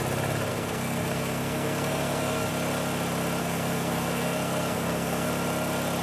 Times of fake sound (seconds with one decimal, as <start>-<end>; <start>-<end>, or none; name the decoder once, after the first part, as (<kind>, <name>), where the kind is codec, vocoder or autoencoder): 0.5-2.5 (codec, SNAC); 3.4-5.3